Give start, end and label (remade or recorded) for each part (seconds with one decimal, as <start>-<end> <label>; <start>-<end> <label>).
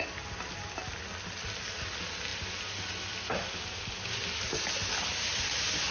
0.0-5.9 recorded